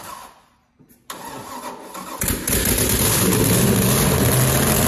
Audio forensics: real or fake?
real